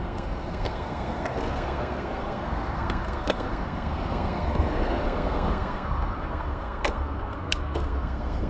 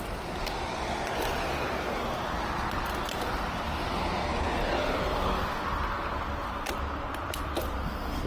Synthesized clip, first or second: first